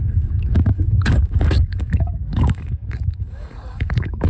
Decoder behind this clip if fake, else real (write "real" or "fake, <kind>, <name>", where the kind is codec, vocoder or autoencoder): fake, codec, DAC